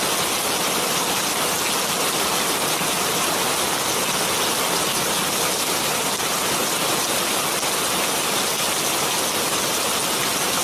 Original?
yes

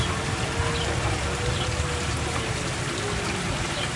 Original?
yes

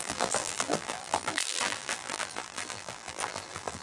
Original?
no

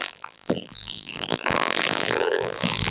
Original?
no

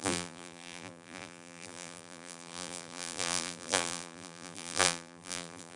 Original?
no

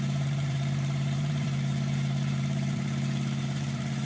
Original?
no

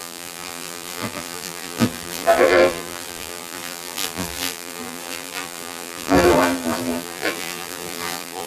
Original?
no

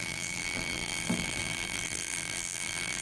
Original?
no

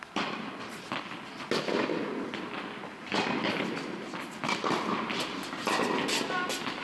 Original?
yes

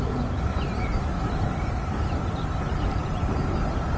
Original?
no